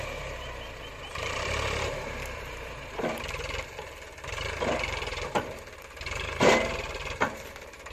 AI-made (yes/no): yes